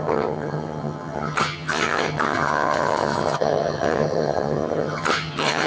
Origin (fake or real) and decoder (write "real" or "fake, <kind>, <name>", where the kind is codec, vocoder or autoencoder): fake, vocoder, HiFi-GAN